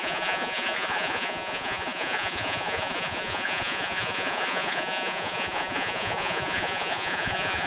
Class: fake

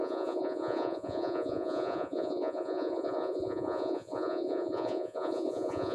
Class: fake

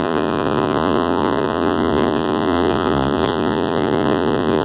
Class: fake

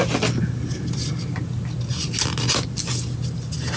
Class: real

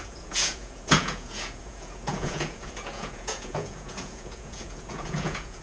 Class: fake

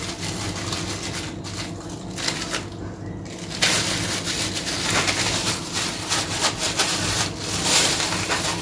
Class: real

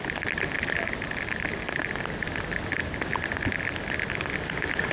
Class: real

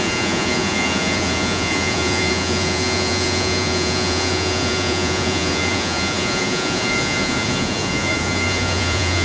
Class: fake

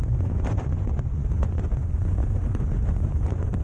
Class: fake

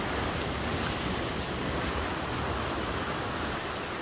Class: real